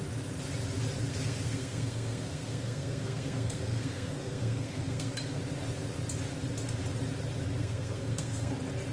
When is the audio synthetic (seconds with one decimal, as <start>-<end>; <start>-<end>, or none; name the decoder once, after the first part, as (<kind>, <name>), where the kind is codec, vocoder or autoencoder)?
1.1-5.4 (codec, SNAC); 7.6-8.5